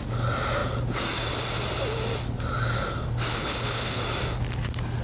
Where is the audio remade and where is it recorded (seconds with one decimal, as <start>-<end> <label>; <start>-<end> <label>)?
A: 0.0-3.3 recorded; 3.3-4.0 remade; 4.0-5.0 recorded